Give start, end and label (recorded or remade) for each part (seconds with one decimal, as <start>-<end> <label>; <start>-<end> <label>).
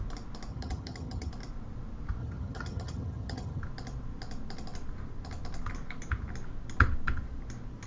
0.0-0.5 recorded; 0.5-1.3 remade; 1.3-2.2 recorded; 2.2-3.6 remade; 3.6-7.9 recorded